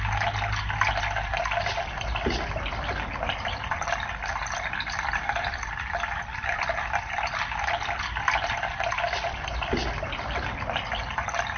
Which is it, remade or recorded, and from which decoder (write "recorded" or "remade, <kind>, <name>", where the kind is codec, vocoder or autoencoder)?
recorded